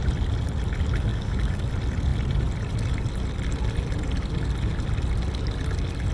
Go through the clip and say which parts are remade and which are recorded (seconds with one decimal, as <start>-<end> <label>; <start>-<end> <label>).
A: 0.0-1.1 recorded; 1.1-1.7 remade; 1.7-6.1 recorded